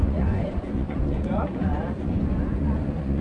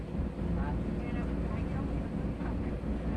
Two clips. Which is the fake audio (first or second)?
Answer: first